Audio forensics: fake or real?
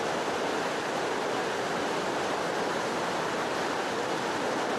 real